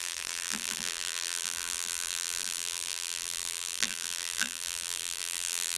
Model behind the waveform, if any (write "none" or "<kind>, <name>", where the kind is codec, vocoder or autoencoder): vocoder, BigVGAN v2